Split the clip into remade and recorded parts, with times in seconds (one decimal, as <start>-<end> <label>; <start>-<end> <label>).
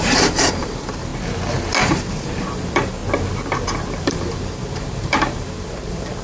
0.0-1.1 remade; 1.1-1.8 recorded; 1.8-3.0 remade; 3.0-3.9 recorded; 3.9-6.2 remade